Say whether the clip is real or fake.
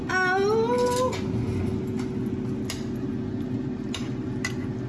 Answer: real